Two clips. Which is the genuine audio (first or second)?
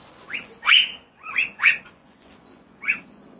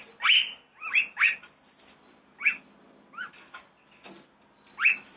second